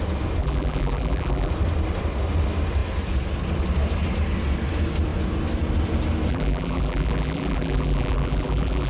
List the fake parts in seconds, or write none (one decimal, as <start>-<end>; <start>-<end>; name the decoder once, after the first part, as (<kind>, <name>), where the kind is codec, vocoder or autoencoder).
0.4-1.5 (vocoder, BigVGAN v2); 6.3-8.9